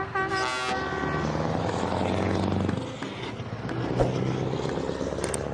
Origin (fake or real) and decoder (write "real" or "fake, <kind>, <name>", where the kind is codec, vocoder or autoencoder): real